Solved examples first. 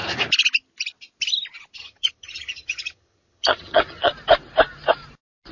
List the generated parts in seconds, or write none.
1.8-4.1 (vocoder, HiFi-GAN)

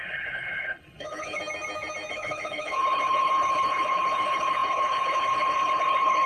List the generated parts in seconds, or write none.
0.0-1.4 (codec, HILCodec); 2.1-6.3

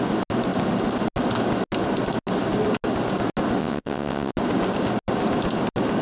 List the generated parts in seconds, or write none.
3.6-4.3 (vocoder, WaveNeXt)

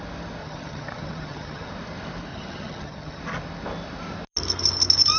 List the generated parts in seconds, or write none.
0.4-1.7 (vocoder, HiFi-GAN); 2.3-3.2

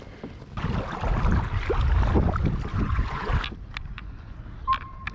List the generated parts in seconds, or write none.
2.7-3.3 (vocoder, Vocos); 3.8-4.4